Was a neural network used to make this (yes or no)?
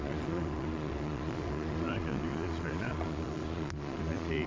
yes